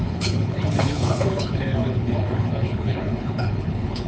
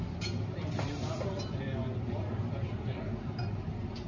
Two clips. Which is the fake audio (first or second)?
first